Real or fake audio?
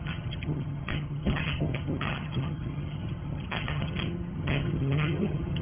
fake